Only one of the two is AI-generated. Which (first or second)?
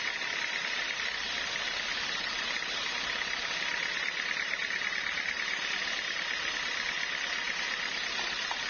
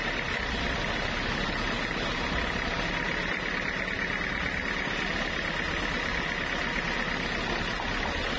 first